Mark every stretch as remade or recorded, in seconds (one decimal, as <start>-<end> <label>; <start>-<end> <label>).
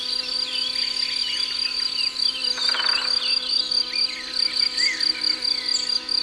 0.0-6.2 recorded